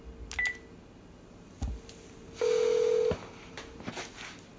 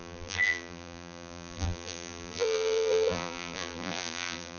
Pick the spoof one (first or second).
second